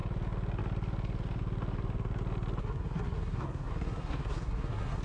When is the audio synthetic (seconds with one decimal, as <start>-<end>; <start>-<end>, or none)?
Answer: 2.6-5.0

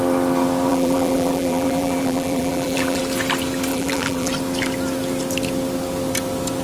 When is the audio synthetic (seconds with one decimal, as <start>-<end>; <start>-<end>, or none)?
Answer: 0.7-3.0; 3.7-4.3

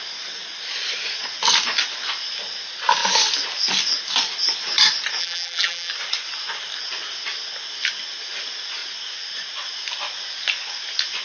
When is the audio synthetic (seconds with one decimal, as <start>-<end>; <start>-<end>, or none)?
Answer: 5.2-5.9